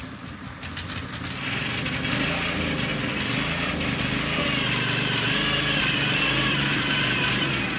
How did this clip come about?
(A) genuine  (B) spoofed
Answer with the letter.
A